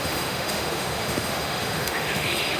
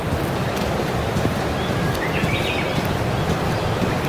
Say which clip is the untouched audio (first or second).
second